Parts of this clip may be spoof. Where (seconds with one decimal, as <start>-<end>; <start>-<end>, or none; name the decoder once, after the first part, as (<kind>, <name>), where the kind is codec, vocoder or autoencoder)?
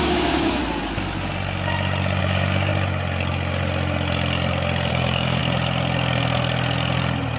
0.0-0.6 (codec, DAC); 2.2-2.7; 4.9-5.4